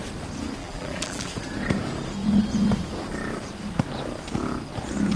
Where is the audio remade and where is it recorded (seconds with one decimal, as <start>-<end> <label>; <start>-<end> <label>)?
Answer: 0.0-0.6 recorded; 0.6-1.3 remade; 1.3-5.2 recorded